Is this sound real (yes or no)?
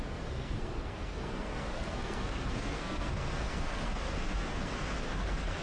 no